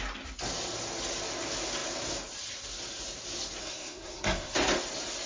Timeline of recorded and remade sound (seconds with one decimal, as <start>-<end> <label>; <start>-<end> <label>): 0.0-3.6 recorded; 3.6-4.6 remade; 4.6-5.3 recorded